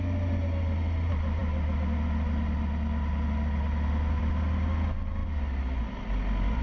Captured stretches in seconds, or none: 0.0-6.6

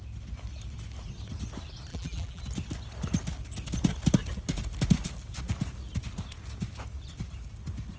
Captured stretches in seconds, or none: 0.0-1.9; 2.4-8.0

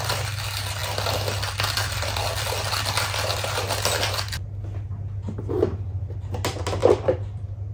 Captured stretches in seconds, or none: 0.0-6.8

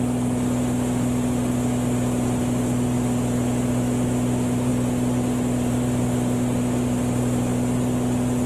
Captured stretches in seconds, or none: 0.0-8.5

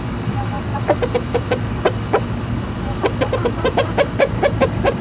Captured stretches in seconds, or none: none

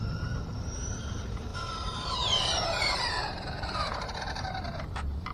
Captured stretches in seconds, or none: none

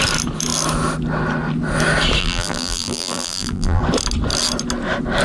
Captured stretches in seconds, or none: 0.0-2.2; 3.8-5.2